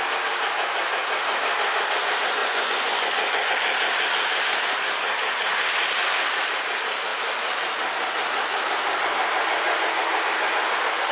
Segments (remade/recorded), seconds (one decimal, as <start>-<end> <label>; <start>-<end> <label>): 0.0-2.4 recorded; 2.4-3.5 remade; 3.5-11.1 recorded